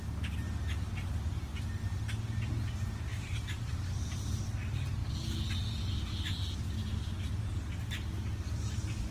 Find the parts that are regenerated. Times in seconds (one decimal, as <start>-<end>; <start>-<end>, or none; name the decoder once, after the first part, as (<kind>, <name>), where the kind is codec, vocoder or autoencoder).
none